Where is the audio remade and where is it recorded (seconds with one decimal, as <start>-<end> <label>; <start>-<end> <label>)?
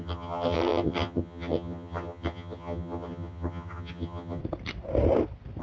0.0-4.4 remade; 4.4-5.6 recorded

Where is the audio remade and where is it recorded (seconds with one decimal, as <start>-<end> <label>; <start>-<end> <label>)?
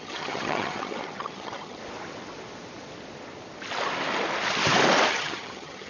0.0-1.8 remade; 1.8-5.1 recorded; 5.1-5.9 remade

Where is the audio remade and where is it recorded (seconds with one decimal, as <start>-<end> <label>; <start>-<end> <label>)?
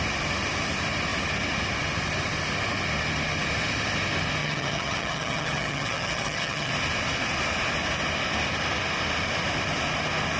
0.0-4.4 recorded; 4.4-6.7 remade; 6.7-10.4 recorded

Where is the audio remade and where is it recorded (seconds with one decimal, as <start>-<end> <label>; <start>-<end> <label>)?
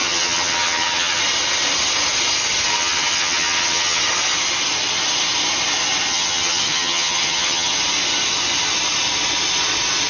0.0-1.2 remade; 1.2-2.7 recorded; 2.7-4.0 remade; 4.0-6.1 recorded; 6.1-7.7 remade; 7.7-10.1 recorded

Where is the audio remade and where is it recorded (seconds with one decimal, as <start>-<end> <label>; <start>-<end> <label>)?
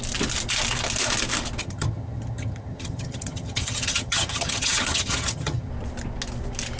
0.0-1.6 recorded; 1.6-5.7 remade; 5.7-6.8 recorded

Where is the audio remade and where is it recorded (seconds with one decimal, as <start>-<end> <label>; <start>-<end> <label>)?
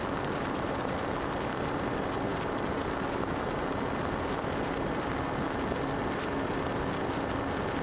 0.0-7.8 recorded